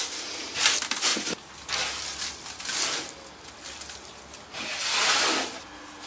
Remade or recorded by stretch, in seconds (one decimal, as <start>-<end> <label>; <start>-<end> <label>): 0.0-6.1 recorded